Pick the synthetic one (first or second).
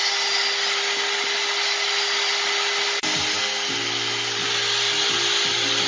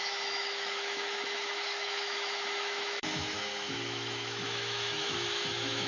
second